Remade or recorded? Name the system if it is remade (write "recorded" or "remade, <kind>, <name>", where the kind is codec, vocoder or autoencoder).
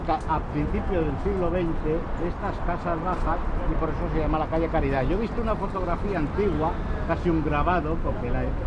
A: recorded